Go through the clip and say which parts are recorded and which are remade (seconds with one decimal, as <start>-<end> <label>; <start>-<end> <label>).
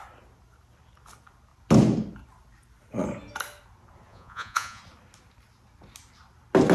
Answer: 0.0-4.1 recorded; 4.1-4.8 remade; 4.8-6.7 recorded